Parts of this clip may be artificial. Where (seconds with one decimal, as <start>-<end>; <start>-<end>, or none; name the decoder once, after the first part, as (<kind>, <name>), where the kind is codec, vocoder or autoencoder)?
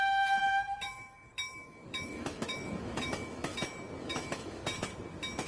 0.0-3.5 (autoencoder, DAC-VAE); 4.0-4.6